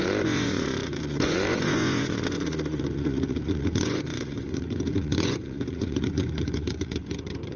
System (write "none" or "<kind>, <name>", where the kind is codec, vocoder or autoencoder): vocoder, Vocos